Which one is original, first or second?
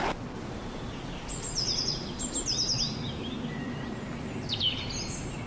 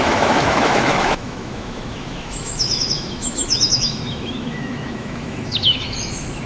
first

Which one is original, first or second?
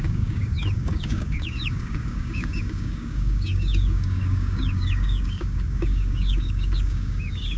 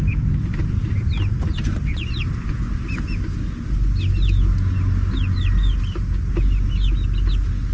second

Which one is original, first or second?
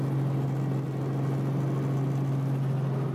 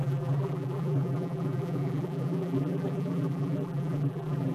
first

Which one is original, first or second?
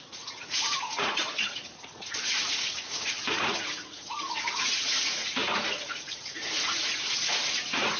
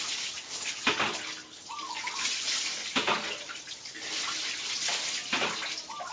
second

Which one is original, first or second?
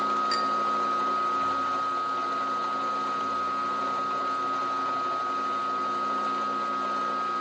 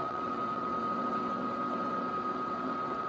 first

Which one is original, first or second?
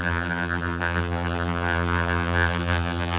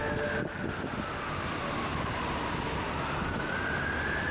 second